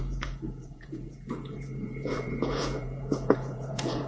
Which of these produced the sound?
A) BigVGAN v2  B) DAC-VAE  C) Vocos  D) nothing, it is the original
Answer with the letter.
C